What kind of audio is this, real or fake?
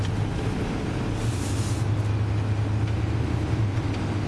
real